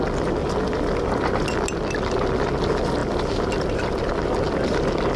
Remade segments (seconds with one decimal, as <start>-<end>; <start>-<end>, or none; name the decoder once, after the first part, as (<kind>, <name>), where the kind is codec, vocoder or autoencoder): 0.4-1.0 (vocoder, BigVGAN v2); 3.0-4.1